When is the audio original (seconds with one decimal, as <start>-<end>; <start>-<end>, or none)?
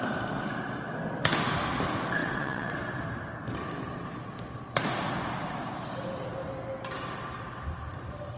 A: 0.0-2.2; 3.0-8.4